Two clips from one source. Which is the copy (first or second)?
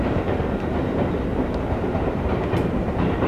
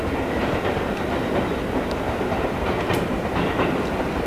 first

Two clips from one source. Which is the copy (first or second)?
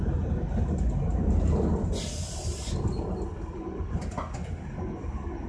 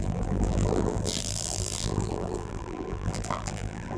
second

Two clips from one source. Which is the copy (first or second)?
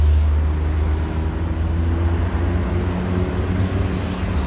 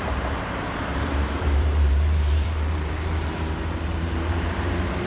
second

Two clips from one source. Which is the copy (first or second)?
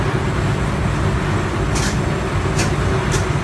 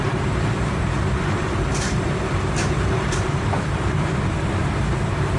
second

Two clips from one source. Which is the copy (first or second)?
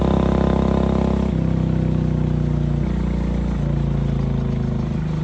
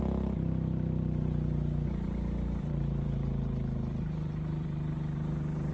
second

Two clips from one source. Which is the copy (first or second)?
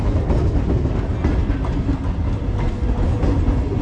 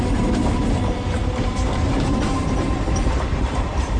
second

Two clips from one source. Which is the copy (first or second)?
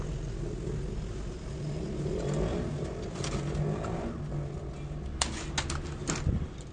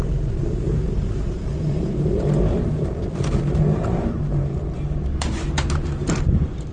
second